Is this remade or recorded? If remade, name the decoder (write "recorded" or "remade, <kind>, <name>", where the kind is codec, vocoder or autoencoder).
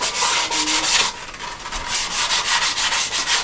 recorded